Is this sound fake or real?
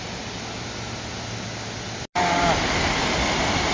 real